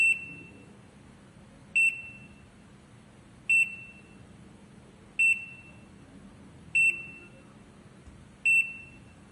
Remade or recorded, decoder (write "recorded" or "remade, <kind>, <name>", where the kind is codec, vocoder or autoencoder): recorded